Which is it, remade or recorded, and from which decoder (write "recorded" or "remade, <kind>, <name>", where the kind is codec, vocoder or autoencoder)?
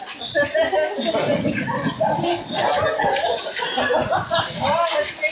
remade, vocoder, BigVGAN v2